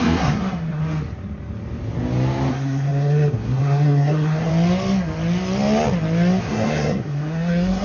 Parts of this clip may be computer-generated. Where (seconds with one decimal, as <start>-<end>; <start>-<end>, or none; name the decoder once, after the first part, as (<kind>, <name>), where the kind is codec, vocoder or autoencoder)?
0.0-0.8 (codec, SNAC); 2.5-4.5; 6.4-7.8

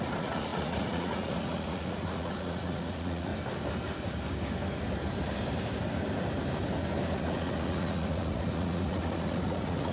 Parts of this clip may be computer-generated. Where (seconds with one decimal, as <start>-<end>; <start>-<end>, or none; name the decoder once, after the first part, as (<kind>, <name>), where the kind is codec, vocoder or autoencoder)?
0.0-3.3 (vocoder, Vocos); 7.1-9.9

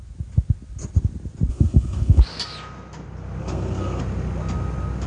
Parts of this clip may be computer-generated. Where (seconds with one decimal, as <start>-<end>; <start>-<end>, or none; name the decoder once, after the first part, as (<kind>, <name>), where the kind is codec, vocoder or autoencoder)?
1.5-2.2 (codec, SNAC); 3.4-4.0